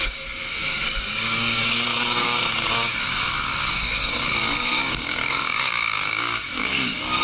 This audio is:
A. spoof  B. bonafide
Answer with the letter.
A